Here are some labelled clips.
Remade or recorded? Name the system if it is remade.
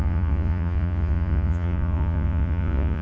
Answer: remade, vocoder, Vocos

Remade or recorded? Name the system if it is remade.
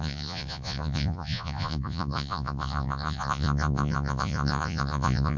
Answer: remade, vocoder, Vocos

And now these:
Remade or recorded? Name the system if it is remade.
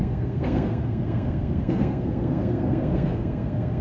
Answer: remade, codec, SNAC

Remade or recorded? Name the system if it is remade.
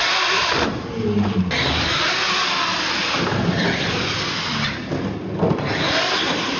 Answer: recorded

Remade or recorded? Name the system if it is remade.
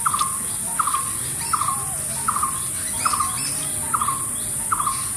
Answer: recorded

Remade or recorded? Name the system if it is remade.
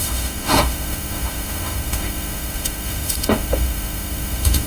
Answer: remade, autoencoder, DAC-VAE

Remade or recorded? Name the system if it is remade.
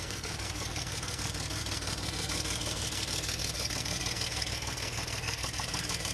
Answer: remade, codec, SNAC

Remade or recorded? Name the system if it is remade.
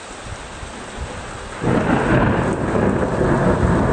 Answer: recorded